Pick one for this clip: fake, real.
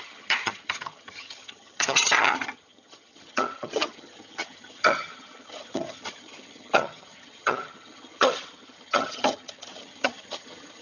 fake